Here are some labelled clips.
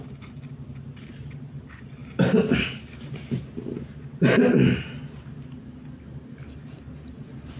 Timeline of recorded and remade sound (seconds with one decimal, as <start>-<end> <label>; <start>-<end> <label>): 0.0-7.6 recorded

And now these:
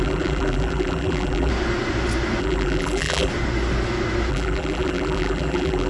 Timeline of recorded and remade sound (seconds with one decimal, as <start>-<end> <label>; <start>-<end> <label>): 0.0-1.5 remade; 1.5-2.4 recorded; 2.4-3.3 remade; 3.3-4.3 recorded; 4.3-5.9 remade

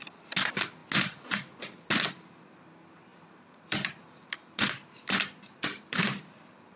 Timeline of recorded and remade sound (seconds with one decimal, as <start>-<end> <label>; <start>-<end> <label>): 0.0-3.1 recorded; 3.1-6.8 remade

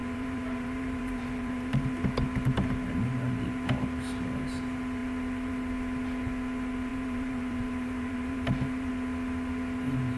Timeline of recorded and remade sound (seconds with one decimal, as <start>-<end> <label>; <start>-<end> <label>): 0.0-2.1 remade; 2.1-6.9 recorded; 6.9-8.9 remade; 8.9-10.2 recorded

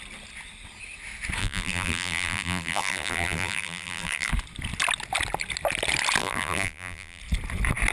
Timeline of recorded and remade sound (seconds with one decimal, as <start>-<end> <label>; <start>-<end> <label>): 0.0-1.4 recorded; 1.4-4.3 remade; 4.3-6.2 recorded; 6.2-7.2 remade; 7.2-7.9 recorded

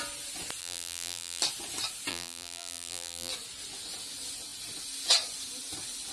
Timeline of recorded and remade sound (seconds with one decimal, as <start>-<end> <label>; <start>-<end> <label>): 0.0-0.6 recorded; 0.6-1.4 remade; 1.4-2.1 recorded; 2.1-3.3 remade; 3.3-6.1 recorded